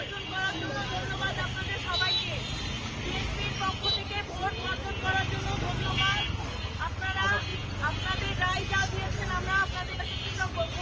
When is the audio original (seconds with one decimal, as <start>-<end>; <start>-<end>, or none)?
0.0-10.8